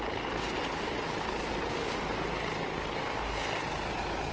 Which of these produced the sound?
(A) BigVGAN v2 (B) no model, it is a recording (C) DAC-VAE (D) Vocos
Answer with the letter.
B